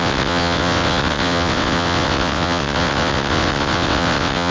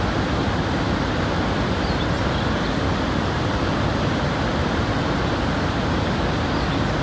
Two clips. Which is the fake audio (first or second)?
first